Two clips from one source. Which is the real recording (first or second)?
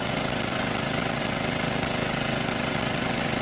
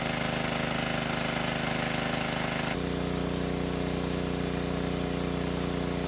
second